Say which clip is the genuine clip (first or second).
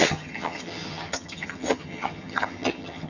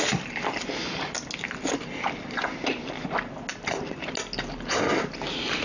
second